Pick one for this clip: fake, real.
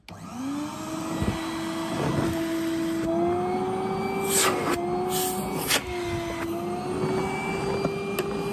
real